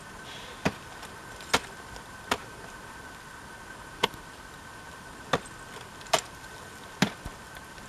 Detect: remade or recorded recorded